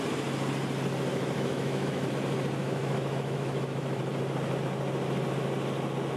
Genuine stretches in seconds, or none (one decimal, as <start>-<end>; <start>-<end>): 0.0-1.1; 2.1-2.6; 4.0-6.2